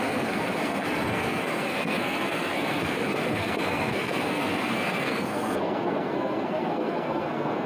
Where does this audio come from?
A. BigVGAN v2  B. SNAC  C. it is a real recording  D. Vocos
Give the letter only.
B